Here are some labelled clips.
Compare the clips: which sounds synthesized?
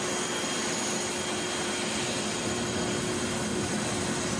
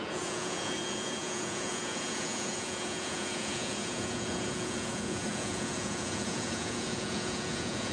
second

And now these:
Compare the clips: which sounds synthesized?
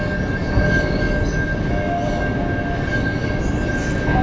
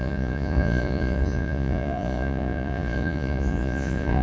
second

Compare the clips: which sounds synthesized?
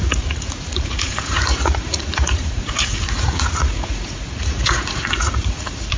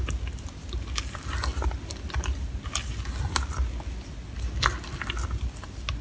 first